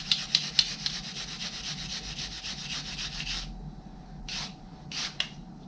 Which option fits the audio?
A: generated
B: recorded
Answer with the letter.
B